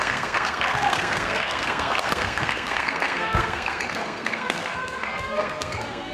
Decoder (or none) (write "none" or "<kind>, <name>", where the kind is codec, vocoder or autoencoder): codec, SNAC